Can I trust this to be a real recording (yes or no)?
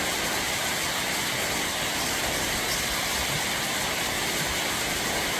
yes